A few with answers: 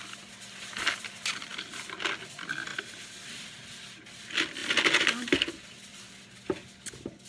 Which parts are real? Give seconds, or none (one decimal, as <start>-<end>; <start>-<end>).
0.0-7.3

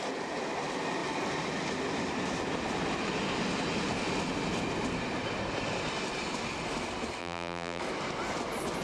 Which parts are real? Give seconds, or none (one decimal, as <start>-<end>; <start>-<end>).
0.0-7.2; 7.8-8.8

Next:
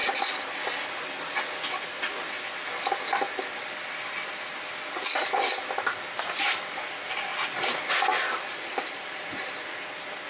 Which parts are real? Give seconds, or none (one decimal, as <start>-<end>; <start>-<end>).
0.0-8.5; 9.6-10.3

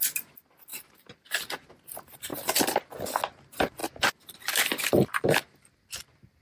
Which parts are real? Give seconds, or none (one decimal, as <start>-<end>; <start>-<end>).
0.0-6.4

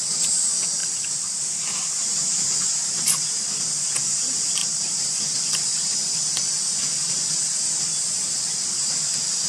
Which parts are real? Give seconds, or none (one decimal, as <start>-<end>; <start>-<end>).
0.0-0.8; 3.2-4.6; 5.1-9.5

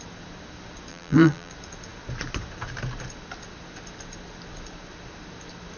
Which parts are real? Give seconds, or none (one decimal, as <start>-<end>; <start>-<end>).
0.0-0.9; 1.5-5.8

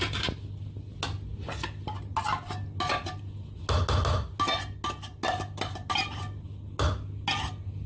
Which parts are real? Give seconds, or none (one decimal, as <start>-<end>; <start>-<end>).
0.0-7.9

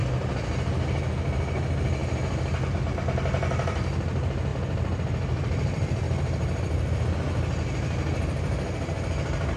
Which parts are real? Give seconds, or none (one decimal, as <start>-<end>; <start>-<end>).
0.0-4.5; 7.0-9.6